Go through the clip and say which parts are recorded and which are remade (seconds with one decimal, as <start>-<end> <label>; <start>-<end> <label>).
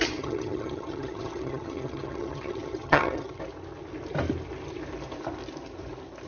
0.0-3.4 remade; 3.4-6.3 recorded